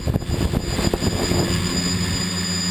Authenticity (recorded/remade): recorded